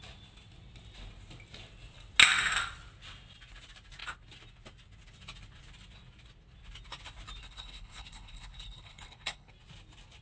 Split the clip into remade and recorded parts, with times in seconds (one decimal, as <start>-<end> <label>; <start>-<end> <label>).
0.0-7.4 recorded; 7.4-9.5 remade; 9.5-10.2 recorded